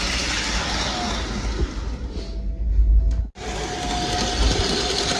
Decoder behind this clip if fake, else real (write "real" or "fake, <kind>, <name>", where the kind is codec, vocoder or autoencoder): real